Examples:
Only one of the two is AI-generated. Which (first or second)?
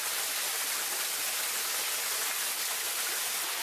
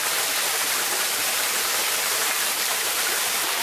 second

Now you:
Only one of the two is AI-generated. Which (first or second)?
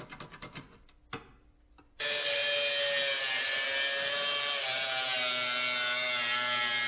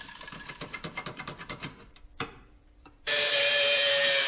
second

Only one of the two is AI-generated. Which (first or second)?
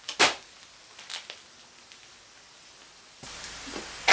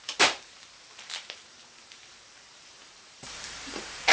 second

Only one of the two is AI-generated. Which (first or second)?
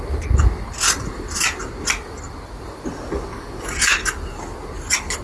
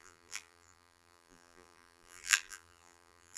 second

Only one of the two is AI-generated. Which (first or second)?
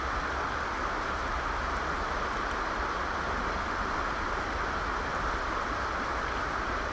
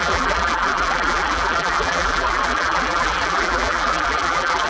second